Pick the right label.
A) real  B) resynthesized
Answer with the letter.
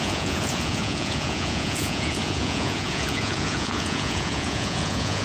B